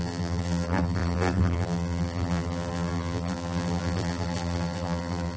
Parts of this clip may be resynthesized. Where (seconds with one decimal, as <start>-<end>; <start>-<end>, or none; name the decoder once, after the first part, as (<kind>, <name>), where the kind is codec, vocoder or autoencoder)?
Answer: 0.0-5.4 (vocoder, BigVGAN v2)

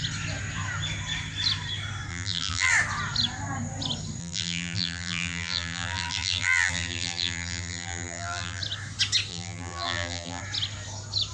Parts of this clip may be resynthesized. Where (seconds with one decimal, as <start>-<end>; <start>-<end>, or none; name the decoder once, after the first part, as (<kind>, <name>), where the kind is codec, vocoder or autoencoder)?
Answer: 2.1-2.7 (vocoder, BigVGAN v2); 4.2-8.6; 9.3-10.4

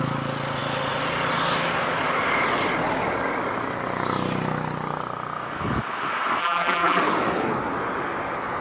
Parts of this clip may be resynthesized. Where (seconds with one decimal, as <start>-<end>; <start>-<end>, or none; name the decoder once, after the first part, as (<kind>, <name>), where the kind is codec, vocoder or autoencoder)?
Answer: 6.4-7.0 (vocoder, BigVGAN v2)

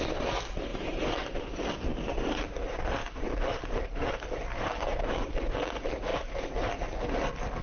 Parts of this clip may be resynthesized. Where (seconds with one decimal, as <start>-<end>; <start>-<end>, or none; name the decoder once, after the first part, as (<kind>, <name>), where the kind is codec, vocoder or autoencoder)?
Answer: 0.7-1.7 (vocoder, BigVGAN v2); 3.0-5.3; 6.1-6.8

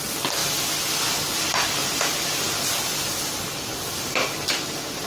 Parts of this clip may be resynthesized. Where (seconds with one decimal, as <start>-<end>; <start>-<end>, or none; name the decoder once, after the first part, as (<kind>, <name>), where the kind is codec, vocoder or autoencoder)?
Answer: 1.8-5.1 (vocoder, BigVGAN v2)

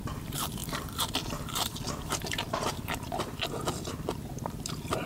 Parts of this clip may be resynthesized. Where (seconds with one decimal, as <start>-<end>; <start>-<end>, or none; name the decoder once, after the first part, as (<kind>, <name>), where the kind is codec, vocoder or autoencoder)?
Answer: 0.0-0.6 (vocoder, BigVGAN v2); 1.7-2.4; 4.4-5.1